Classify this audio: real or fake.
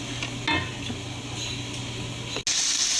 real